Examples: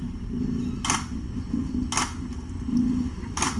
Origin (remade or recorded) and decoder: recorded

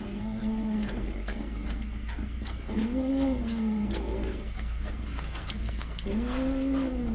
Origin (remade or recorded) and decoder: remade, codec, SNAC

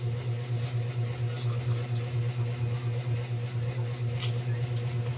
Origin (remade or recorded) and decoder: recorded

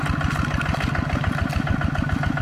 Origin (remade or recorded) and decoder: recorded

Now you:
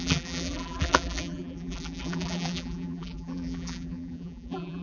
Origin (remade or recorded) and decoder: remade, vocoder, BigVGAN v2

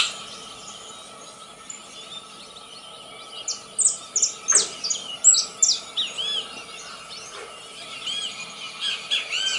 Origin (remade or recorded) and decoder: recorded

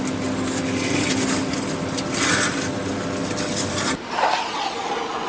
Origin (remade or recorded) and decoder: recorded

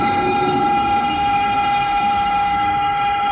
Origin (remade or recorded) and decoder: remade, codec, HILCodec